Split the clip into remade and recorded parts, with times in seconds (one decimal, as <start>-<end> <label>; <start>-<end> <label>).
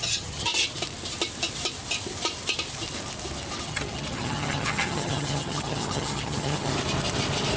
0.0-0.5 remade; 0.5-3.6 recorded; 3.6-6.7 remade; 6.7-7.6 recorded